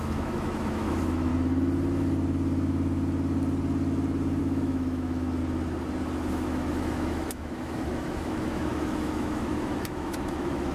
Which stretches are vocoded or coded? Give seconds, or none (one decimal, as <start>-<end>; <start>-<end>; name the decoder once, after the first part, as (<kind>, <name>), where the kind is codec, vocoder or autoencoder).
0.0-1.3 (autoencoder, DAC-VAE); 4.4-5.4; 6.3-10.7